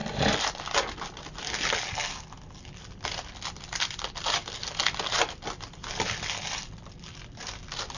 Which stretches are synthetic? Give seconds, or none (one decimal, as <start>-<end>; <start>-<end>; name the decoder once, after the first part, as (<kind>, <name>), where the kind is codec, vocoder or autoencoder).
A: none